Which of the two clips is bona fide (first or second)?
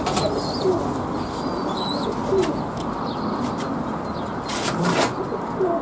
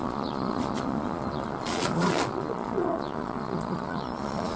first